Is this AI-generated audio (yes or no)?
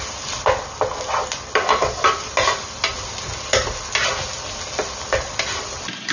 no